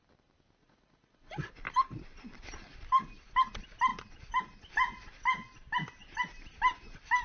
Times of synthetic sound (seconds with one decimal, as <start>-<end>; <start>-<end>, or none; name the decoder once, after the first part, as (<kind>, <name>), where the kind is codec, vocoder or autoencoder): 0.6-1.5 (vocoder, Vocos)